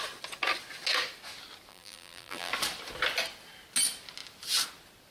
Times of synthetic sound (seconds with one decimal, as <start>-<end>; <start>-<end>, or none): 1.7-2.5